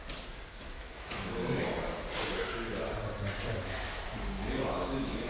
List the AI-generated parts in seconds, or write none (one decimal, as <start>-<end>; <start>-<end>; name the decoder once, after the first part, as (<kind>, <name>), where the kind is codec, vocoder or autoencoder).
0.5-1.4 (autoencoder, DAC-VAE); 4.6-5.3